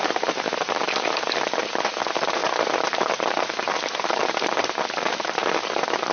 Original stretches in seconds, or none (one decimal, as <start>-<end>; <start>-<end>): none